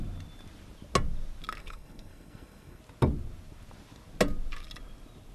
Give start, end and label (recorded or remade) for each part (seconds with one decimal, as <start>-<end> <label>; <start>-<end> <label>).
0.0-1.6 recorded; 1.6-2.8 remade; 2.8-5.3 recorded